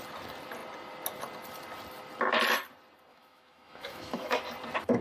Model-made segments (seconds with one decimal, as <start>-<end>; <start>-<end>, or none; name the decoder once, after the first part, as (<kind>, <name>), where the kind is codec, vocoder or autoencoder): 3.1-4.4 (autoencoder, DAC-VAE)